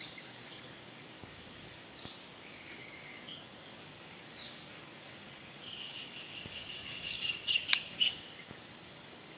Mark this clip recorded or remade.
remade